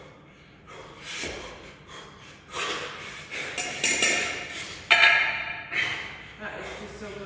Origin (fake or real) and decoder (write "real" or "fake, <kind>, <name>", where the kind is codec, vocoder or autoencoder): real